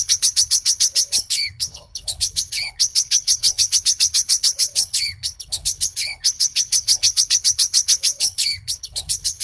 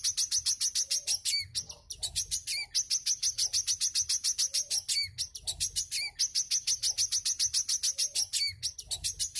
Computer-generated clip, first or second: first